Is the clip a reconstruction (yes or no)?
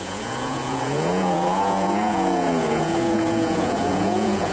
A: yes